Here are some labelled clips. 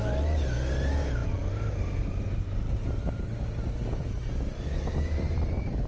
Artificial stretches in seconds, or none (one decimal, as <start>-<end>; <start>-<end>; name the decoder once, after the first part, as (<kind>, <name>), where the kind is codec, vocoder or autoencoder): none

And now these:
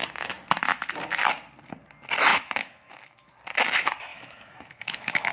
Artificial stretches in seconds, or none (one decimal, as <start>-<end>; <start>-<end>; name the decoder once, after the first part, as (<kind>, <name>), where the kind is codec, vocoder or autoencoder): 2.3-3.4 (autoencoder, DAC-VAE); 4.1-5.3

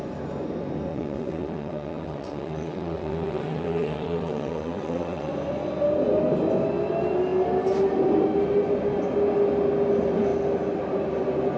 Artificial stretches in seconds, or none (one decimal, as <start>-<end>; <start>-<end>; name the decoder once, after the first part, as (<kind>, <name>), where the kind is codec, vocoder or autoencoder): 0.9-5.3 (vocoder, WaveNeXt)